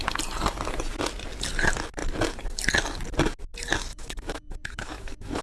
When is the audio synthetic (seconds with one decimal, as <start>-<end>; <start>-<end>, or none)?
3.9-5.4